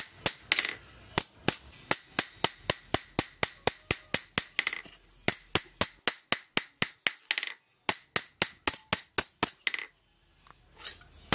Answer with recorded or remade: recorded